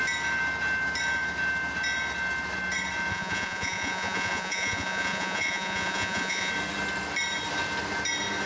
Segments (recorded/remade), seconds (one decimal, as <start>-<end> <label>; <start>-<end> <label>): 0.0-3.1 recorded; 3.1-6.5 remade; 6.5-8.5 recorded